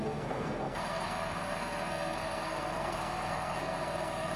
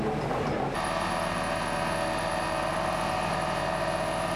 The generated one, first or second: first